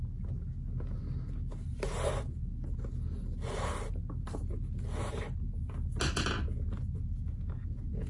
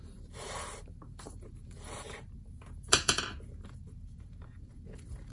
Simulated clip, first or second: second